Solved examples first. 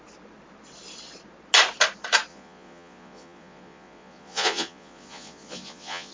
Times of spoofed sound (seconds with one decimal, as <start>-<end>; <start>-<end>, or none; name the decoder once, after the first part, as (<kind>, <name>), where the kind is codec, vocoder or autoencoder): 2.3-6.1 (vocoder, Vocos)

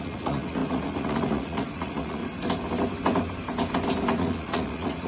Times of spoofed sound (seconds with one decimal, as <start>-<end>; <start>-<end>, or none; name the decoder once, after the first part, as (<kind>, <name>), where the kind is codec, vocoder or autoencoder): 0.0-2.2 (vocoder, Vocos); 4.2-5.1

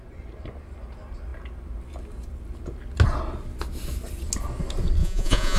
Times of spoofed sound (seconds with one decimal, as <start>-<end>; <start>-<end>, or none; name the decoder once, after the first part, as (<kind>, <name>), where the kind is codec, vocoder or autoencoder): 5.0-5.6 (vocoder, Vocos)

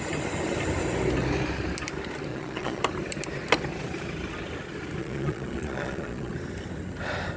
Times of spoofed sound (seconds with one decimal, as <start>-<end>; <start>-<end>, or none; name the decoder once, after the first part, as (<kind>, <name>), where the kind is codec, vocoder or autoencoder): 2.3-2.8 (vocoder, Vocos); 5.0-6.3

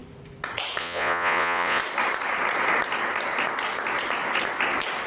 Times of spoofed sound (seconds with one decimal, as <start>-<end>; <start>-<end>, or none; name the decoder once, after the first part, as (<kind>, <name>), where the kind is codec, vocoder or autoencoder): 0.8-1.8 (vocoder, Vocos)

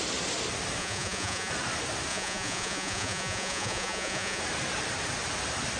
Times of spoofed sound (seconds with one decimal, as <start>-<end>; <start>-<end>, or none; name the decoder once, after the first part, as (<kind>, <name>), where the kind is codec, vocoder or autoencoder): 0.8-1.5 (vocoder, Vocos); 2.1-4.4

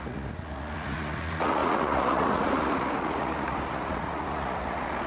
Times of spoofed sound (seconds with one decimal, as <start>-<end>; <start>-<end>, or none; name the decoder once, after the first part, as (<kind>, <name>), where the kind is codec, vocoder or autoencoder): 0.0-5.1 (vocoder, Vocos)